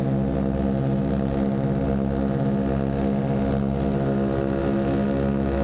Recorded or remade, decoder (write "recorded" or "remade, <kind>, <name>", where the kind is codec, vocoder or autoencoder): recorded